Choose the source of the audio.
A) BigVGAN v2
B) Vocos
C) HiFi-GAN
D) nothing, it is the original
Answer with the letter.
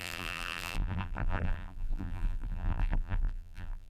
A